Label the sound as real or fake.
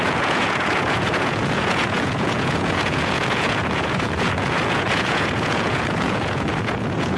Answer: fake